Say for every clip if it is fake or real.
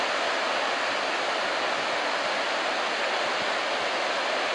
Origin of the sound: real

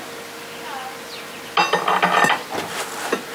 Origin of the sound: real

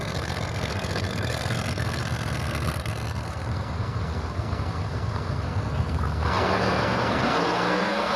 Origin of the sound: fake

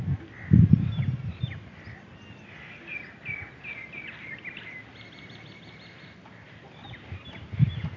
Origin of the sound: real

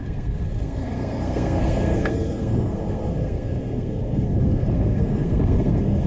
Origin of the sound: fake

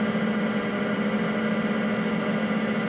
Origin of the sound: real